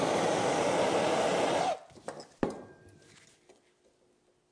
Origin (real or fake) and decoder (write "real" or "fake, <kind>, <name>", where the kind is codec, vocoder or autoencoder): real